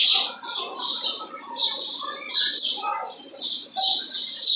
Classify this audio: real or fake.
real